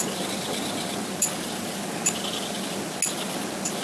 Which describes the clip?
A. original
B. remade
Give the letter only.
A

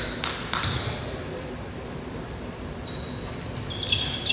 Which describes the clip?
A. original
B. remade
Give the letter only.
A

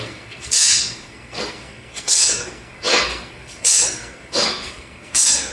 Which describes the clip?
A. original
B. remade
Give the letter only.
B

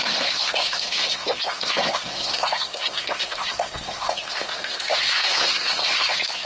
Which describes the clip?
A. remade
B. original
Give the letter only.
A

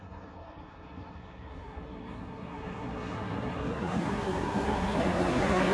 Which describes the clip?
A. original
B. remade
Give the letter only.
B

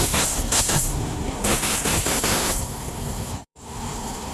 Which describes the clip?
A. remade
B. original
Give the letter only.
A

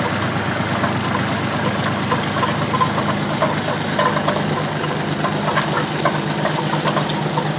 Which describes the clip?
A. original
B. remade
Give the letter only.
A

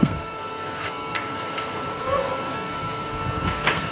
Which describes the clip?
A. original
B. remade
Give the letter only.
B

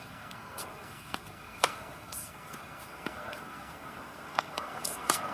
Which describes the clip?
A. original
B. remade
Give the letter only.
B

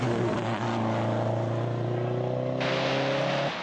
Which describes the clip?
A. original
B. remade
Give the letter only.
A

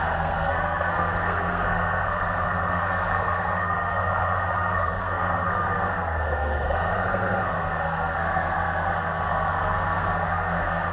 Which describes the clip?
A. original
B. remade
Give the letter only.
B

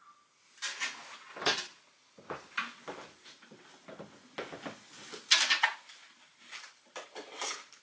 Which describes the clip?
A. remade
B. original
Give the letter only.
B